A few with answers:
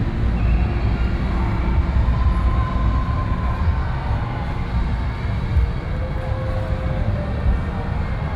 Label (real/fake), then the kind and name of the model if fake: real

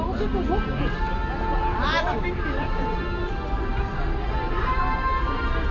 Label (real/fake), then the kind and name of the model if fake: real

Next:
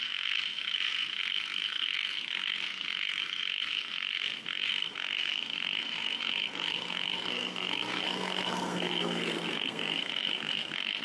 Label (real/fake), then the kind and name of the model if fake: fake, codec, SNAC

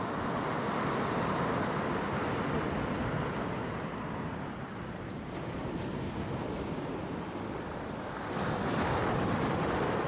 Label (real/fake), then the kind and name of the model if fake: real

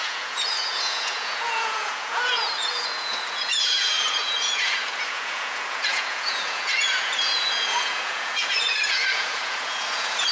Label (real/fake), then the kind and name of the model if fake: fake, vocoder, Vocos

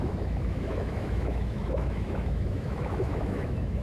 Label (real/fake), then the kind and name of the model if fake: fake, autoencoder, DAC-VAE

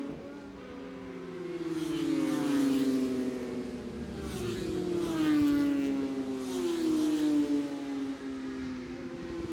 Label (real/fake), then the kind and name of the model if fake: real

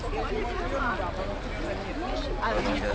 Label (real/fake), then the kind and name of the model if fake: real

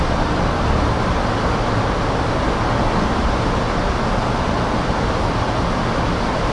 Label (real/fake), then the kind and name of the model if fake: real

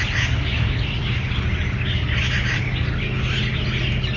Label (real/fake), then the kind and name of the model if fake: real